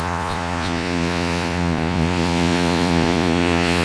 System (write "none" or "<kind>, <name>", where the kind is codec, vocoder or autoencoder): vocoder, Vocos